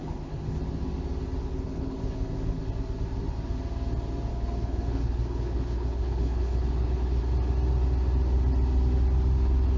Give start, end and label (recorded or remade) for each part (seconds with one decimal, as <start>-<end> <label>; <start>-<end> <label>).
0.0-0.6 remade; 0.6-1.4 recorded; 1.4-2.6 remade; 2.6-4.3 recorded; 4.3-7.2 remade; 7.2-9.8 recorded